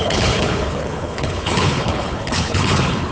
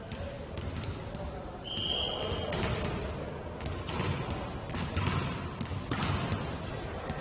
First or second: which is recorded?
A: second